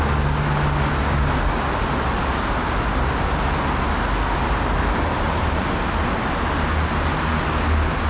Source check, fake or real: real